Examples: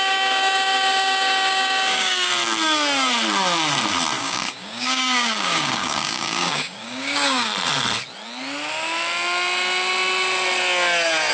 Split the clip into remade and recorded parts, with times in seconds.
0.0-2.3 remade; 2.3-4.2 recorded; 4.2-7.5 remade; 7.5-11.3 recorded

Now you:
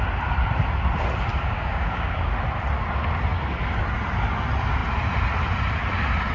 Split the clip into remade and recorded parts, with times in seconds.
0.0-1.3 recorded; 1.3-2.3 remade; 2.3-6.3 recorded

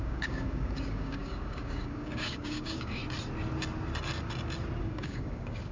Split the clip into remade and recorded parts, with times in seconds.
0.0-3.0 remade; 3.0-4.8 recorded; 4.8-5.7 remade

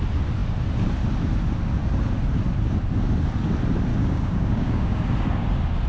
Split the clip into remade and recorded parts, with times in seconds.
0.0-3.9 recorded; 3.9-5.0 remade; 5.0-5.9 recorded

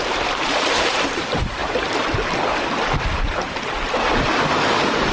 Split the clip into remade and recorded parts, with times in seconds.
0.0-5.1 recorded